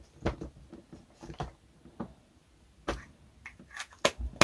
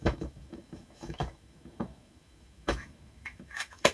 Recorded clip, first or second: first